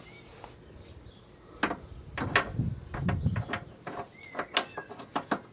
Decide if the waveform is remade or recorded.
recorded